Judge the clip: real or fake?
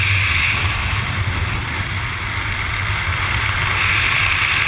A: real